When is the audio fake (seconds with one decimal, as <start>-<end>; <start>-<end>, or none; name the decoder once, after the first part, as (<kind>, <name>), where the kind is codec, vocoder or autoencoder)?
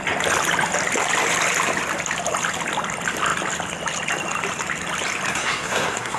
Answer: 5.3-6.2 (codec, SNAC)